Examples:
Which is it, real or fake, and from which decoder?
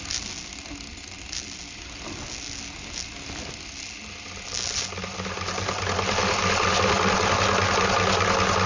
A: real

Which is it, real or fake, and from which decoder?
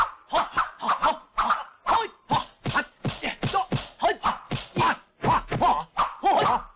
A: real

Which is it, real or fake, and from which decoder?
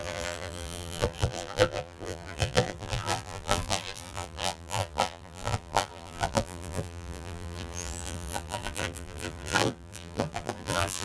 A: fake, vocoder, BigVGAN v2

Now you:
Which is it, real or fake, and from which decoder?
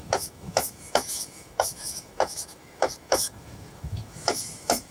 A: fake, autoencoder, DAC-VAE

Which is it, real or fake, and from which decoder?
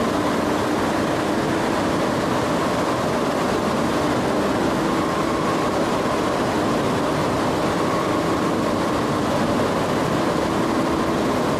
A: real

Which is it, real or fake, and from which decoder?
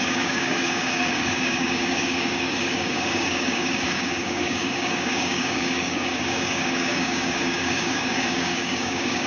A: fake, codec, DAC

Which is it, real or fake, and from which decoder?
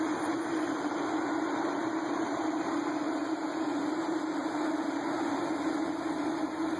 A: fake, vocoder, BigVGAN v2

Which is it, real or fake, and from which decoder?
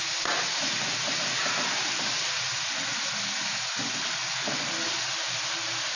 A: real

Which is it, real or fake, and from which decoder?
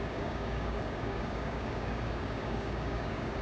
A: fake, codec, DAC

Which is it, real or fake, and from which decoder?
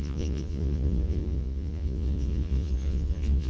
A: fake, vocoder, Vocos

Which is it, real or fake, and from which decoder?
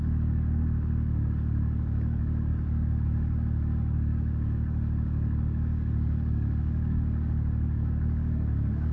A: fake, codec, DAC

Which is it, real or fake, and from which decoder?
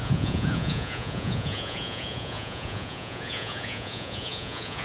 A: fake, vocoder, Vocos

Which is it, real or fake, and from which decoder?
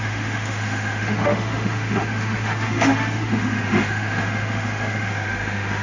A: fake, autoencoder, DAC-VAE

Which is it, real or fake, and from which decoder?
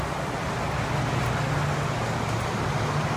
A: real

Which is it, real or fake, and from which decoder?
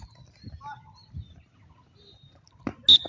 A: real